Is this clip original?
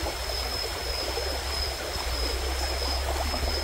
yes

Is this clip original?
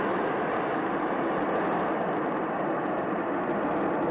yes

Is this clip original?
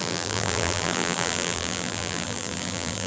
no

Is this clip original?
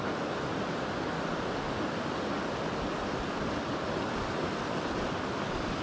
yes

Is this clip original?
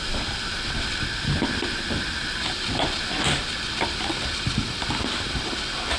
no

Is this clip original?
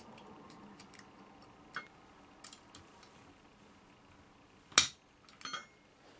yes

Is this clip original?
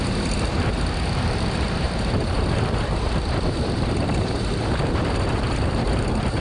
no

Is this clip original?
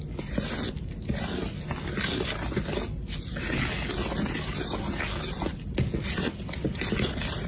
yes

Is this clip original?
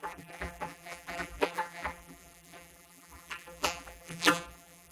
no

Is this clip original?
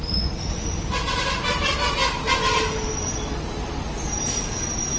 yes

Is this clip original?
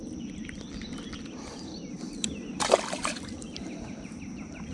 no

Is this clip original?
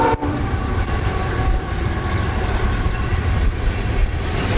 no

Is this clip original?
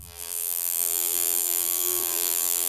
no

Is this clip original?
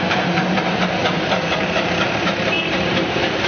no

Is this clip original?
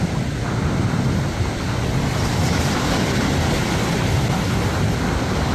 yes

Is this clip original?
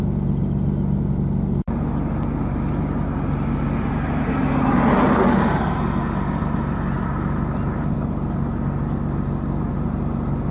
yes